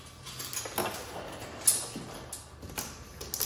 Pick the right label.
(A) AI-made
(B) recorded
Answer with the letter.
B